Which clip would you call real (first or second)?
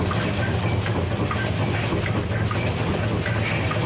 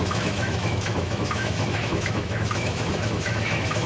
first